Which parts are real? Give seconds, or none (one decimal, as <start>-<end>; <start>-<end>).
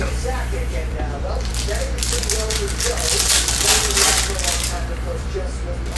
1.5-5.1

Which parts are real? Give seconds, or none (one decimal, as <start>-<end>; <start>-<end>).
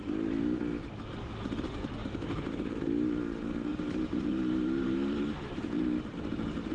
0.0-2.0; 2.8-3.7; 5.8-6.7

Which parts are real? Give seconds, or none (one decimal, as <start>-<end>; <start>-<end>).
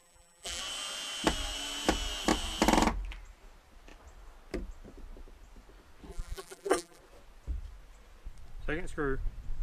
0.6-6.1; 7.0-9.6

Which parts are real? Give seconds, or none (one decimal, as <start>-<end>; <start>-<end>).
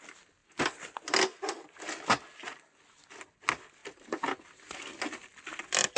0.0-6.0